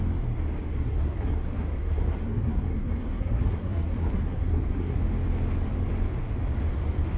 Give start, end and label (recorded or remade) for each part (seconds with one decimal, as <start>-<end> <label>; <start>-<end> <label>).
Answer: 0.0-0.7 recorded; 0.7-5.0 remade; 5.0-7.2 recorded